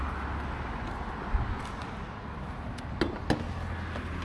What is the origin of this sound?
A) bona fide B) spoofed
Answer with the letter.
A